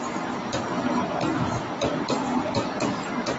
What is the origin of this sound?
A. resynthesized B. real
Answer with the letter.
B